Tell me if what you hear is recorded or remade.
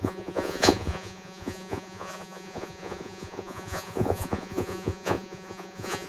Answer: remade